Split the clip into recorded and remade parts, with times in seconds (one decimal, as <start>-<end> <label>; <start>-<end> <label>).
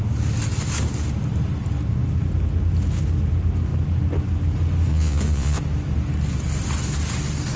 0.0-4.9 recorded; 4.9-5.6 remade; 5.6-7.6 recorded